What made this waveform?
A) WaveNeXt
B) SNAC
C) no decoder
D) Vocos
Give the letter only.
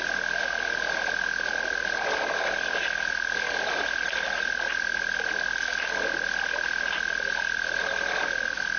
C